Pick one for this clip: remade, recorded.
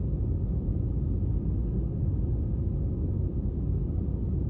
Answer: recorded